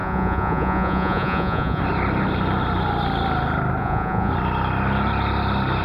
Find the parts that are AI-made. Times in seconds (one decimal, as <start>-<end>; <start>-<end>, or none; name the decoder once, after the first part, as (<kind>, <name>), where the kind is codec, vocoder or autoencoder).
0.0-1.8 (vocoder, Vocos); 3.8-4.3